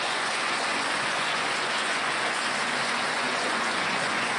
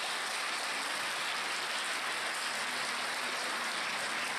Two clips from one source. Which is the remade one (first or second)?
first